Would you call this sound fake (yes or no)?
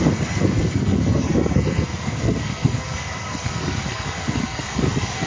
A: yes